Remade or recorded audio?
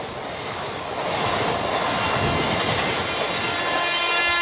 recorded